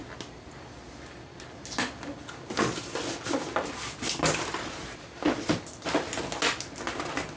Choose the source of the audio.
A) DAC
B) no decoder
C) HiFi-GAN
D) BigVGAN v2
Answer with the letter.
B